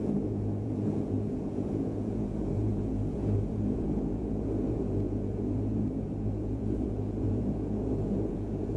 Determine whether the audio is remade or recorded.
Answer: remade